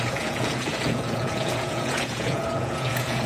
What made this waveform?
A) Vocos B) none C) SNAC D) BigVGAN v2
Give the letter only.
A